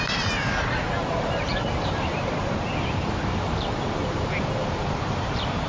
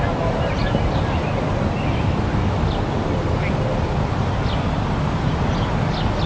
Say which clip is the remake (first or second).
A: first